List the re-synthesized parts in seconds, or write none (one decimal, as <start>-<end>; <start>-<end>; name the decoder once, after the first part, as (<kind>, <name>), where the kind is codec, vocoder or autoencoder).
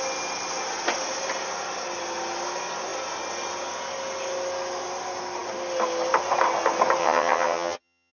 7.0-8.1 (vocoder, HiFi-GAN)